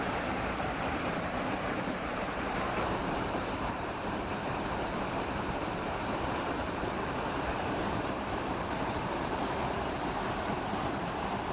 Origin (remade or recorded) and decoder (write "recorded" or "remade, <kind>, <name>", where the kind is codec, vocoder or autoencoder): remade, vocoder, BigVGAN v2